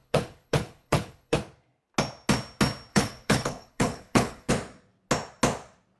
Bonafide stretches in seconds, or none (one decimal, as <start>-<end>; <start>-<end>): 1.4-2.9; 4.5-6.0